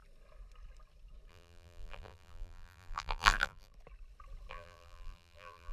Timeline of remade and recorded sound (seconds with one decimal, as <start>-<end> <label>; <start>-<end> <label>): 0.0-1.3 recorded; 1.3-3.7 remade; 3.7-4.5 recorded; 4.5-5.7 remade